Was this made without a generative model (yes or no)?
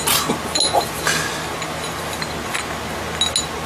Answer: yes